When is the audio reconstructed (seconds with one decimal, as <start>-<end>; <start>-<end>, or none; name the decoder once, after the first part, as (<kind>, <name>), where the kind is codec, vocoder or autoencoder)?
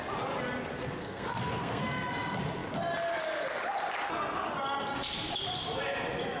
1.0-1.8 (codec, SNAC)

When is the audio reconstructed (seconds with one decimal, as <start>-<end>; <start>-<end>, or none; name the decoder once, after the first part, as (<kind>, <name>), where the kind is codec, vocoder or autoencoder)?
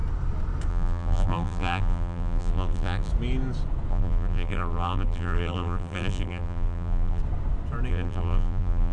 0.7-3.1 (vocoder, BigVGAN v2); 3.9-7.2; 7.9-8.9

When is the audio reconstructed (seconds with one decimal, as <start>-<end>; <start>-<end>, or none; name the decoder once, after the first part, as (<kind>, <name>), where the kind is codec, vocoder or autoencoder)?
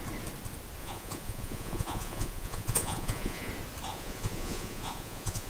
0.8-3.5 (vocoder, Vocos); 3.9-5.5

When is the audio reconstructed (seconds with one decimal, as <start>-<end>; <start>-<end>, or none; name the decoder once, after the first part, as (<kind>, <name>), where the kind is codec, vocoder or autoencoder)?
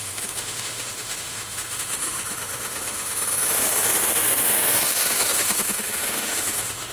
0.0-6.9 (autoencoder, DAC-VAE)